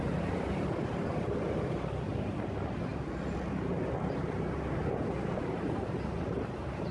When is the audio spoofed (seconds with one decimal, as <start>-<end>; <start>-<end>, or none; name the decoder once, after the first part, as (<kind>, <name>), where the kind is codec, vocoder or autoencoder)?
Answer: none